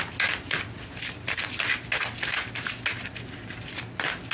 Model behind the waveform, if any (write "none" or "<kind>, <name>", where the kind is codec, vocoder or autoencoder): none